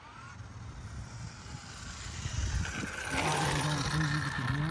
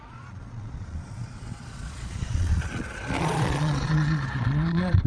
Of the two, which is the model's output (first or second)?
second